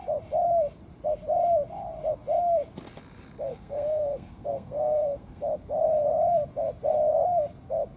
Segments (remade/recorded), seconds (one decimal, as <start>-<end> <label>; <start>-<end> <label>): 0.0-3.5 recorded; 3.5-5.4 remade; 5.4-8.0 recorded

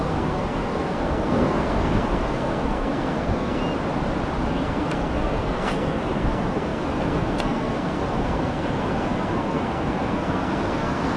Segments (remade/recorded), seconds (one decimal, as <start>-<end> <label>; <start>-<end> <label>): 0.0-3.6 remade; 3.6-4.5 recorded; 4.5-11.2 remade

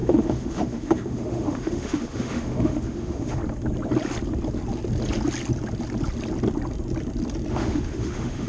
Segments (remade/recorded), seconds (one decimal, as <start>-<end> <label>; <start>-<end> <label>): 0.0-3.4 remade; 3.4-7.5 recorded; 7.5-8.5 remade

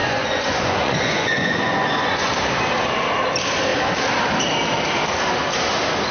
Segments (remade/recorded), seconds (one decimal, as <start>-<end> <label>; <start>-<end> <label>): 0.0-2.3 remade; 2.3-6.1 recorded

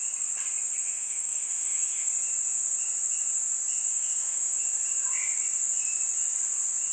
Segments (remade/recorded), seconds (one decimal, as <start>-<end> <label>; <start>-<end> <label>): 0.0-0.8 recorded; 0.8-2.1 remade; 2.1-3.9 recorded; 3.9-4.6 remade; 4.6-6.9 recorded

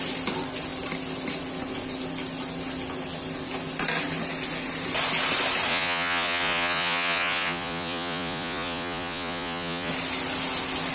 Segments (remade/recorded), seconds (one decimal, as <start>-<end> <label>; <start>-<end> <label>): 0.0-5.7 recorded; 5.7-9.9 remade; 9.9-10.9 recorded

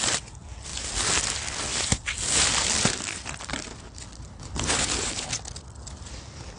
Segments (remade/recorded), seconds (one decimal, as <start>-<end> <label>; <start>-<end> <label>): 0.0-4.3 recorded; 4.3-5.3 remade; 5.3-6.6 recorded